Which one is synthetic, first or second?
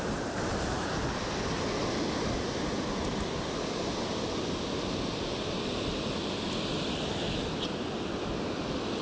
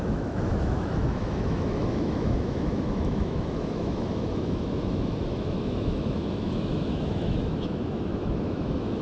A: second